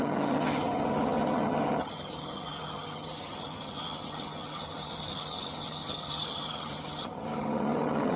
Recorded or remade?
remade